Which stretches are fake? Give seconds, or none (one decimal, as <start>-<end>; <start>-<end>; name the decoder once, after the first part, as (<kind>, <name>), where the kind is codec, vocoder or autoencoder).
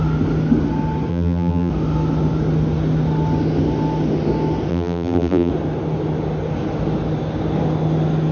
1.1-1.7 (vocoder, BigVGAN v2); 4.7-5.5